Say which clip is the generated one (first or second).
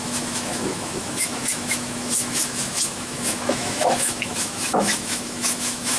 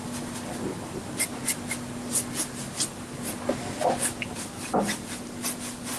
first